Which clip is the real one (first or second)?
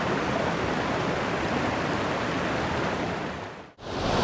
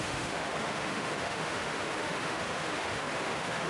first